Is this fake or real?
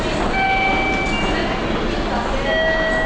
real